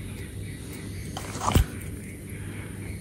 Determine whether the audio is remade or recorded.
recorded